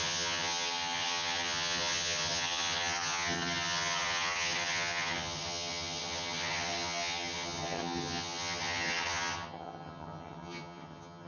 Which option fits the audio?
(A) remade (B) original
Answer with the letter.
A